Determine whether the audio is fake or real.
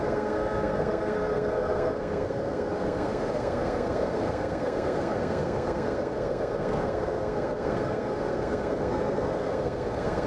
fake